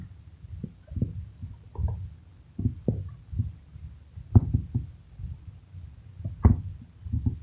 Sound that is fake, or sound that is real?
real